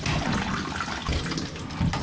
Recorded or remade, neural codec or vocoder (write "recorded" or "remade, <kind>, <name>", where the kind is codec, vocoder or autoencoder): recorded